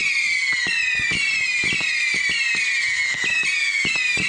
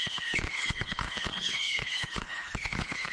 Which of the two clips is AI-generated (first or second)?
second